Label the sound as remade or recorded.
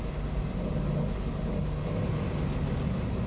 recorded